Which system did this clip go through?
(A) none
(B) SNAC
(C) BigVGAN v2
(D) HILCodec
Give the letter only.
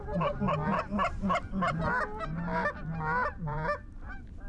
A